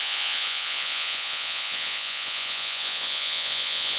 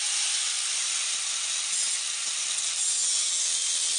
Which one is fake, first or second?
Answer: first